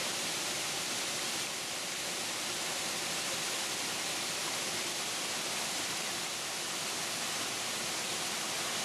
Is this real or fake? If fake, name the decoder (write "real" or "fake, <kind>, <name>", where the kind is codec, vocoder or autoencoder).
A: real